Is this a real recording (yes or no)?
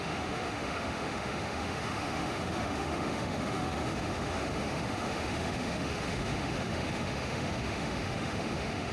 no